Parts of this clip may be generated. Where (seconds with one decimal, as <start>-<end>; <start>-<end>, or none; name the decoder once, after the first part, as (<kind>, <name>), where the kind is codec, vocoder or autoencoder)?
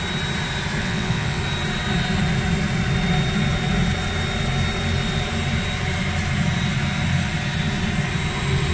0.8-1.4 (vocoder, WaveNeXt)